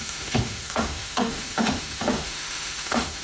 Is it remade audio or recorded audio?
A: remade